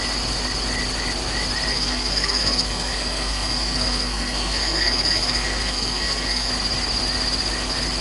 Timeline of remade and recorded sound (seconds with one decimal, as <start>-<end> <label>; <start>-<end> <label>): 0.0-1.7 recorded; 1.7-6.5 remade; 6.5-8.0 recorded

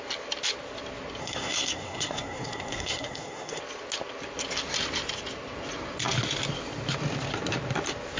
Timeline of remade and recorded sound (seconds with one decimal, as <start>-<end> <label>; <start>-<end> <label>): 0.0-1.2 recorded; 1.2-3.6 remade; 3.6-8.2 recorded

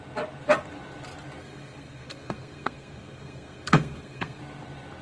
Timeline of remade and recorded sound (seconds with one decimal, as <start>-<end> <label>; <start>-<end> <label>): 0.0-1.4 recorded; 1.4-4.4 remade; 4.4-5.0 recorded

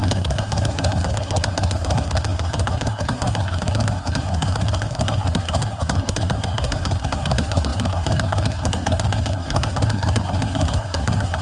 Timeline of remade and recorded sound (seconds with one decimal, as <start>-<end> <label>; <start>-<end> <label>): 0.0-11.4 remade

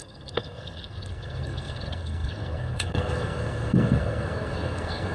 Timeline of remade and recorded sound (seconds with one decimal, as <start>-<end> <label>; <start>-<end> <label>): 0.0-5.1 remade

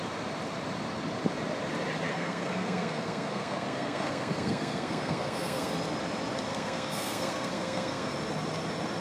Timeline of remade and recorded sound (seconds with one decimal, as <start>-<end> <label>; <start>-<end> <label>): 0.0-2.1 recorded; 2.1-5.7 remade; 5.7-6.5 recorded; 6.5-8.1 remade; 8.1-9.0 recorded